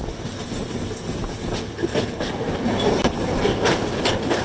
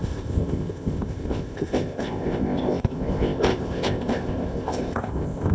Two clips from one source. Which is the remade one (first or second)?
second